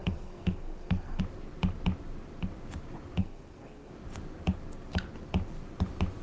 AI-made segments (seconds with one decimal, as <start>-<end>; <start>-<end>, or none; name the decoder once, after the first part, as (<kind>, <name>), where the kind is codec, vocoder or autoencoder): 0.0-1.2 (codec, SNAC); 3.2-3.9